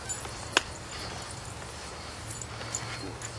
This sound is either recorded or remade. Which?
recorded